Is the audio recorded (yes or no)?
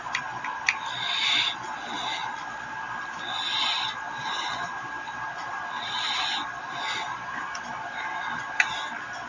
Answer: yes